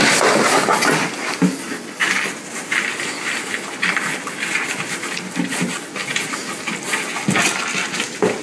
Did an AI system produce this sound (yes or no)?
no